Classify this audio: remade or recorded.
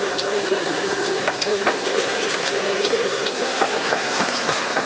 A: remade